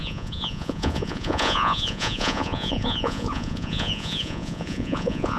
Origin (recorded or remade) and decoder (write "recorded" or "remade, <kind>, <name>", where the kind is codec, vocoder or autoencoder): remade, vocoder, Vocos